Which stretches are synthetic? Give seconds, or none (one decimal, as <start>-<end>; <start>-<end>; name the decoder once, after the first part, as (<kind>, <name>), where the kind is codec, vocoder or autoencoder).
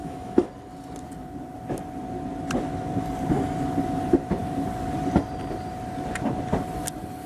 0.0-0.5 (autoencoder, DAC-VAE)